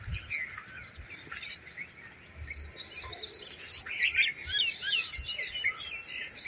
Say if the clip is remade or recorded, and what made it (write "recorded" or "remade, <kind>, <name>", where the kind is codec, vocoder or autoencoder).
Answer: recorded